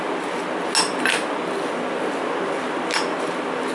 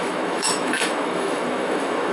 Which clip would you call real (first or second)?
first